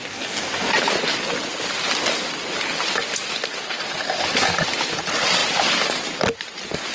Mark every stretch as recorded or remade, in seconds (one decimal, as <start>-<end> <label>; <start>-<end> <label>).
0.0-0.7 remade; 0.7-6.9 recorded